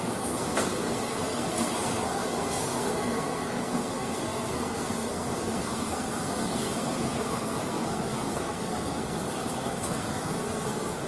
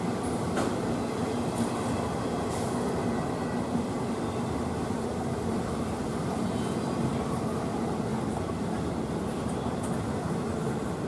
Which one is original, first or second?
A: second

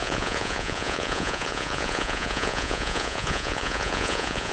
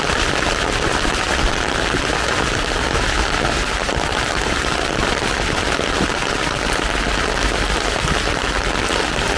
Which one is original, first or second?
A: second